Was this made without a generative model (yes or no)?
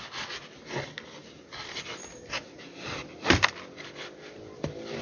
yes